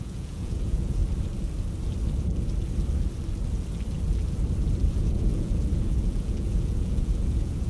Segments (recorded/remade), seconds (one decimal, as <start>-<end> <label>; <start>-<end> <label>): 0.0-1.0 remade; 1.0-4.9 recorded; 4.9-7.7 remade